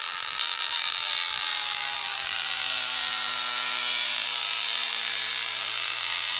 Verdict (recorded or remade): remade